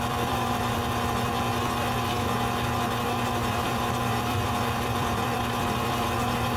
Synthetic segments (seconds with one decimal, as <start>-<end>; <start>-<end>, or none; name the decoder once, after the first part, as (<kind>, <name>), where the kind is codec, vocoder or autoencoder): 0.0-0.8 (vocoder, BigVGAN v2); 3.5-6.6